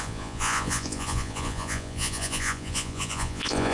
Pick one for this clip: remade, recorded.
remade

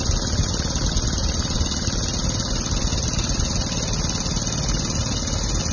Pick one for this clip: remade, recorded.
recorded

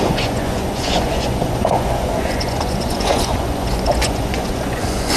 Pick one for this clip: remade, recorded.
remade